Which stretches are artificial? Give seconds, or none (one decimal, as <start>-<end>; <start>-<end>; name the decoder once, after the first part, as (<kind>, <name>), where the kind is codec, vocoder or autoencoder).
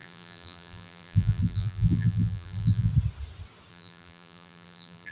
0.0-2.9 (vocoder, BigVGAN v2); 3.7-5.1